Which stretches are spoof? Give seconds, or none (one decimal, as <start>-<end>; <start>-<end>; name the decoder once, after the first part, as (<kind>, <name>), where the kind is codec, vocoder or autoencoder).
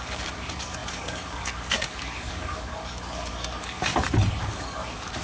0.0-3.9 (codec, DAC); 4.4-5.2